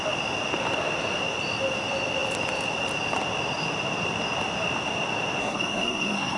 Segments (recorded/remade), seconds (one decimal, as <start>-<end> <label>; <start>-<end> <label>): 0.0-5.4 recorded; 5.4-6.4 remade